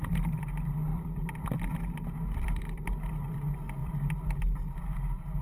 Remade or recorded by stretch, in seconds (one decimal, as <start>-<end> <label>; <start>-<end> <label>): 0.0-0.9 recorded; 0.9-2.6 remade; 2.6-3.8 recorded; 3.8-4.4 remade; 4.4-5.4 recorded